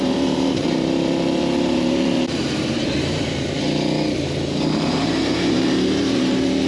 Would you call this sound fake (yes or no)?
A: yes